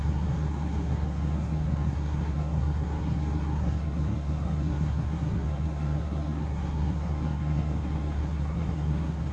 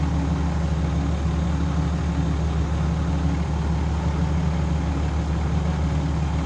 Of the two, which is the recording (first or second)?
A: second